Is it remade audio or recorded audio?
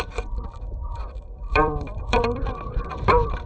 remade